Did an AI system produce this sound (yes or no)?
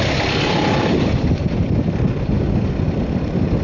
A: yes